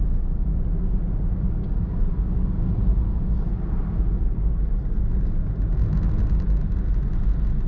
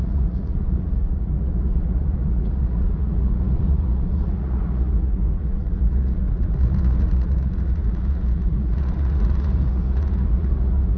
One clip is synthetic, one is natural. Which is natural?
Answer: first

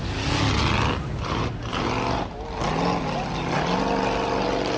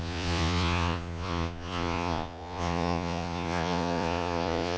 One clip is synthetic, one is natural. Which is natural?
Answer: first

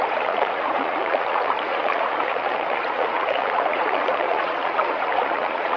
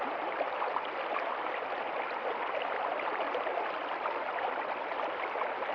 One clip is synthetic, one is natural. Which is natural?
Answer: second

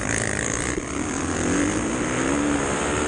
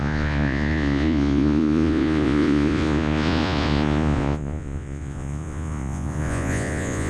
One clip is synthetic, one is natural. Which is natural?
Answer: first